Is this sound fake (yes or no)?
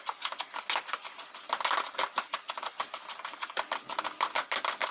no